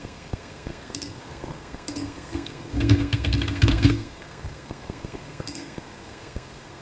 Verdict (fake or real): fake